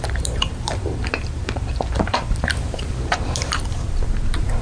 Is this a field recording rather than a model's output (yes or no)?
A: no